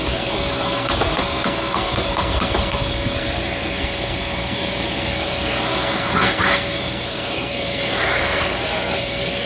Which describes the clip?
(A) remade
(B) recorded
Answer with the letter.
A